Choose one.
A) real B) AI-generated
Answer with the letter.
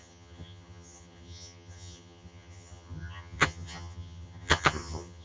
B